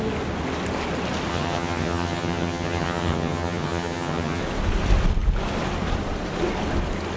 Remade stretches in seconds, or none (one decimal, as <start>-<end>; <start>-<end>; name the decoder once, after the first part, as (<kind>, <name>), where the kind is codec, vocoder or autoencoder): 1.3-4.4 (vocoder, HiFi-GAN)